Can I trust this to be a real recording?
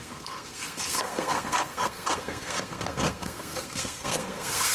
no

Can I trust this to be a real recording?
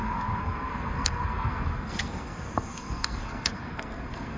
no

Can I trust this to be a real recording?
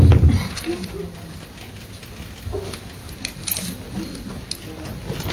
yes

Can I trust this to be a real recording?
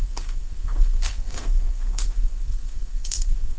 no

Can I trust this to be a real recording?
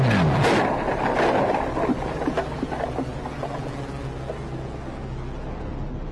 yes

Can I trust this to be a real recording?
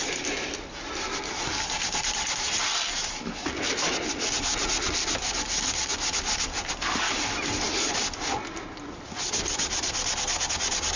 yes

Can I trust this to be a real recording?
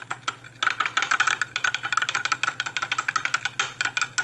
yes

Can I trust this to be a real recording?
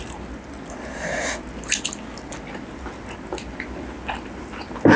yes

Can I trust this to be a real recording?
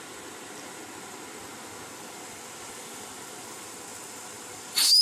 yes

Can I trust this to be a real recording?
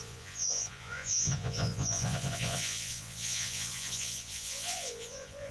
no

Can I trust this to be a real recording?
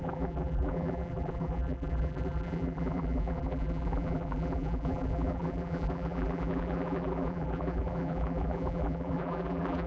no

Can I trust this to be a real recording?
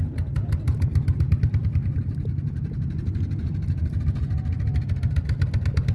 yes